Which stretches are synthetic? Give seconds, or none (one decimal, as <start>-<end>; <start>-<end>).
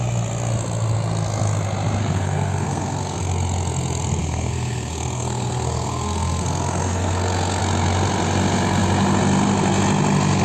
2.0-3.2; 4.2-7.6